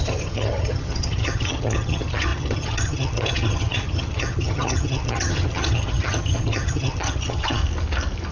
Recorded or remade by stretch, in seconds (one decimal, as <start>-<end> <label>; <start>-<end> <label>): 0.0-7.6 remade; 7.6-8.3 recorded